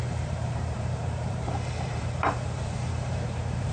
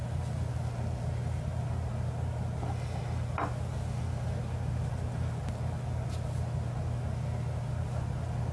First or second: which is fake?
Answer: first